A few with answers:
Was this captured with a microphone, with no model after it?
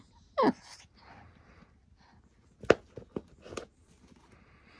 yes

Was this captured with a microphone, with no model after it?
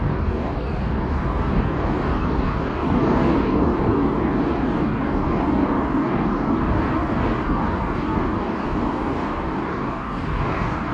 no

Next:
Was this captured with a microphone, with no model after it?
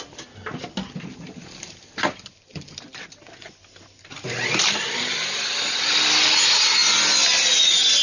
yes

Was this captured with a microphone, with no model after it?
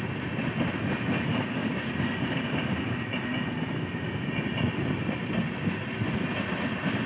yes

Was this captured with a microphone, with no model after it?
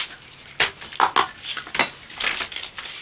yes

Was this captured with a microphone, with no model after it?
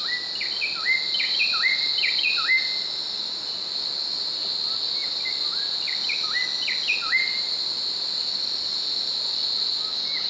yes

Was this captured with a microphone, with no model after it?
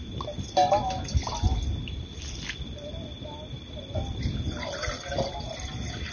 yes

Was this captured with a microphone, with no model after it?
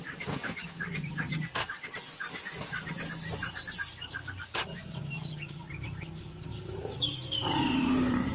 yes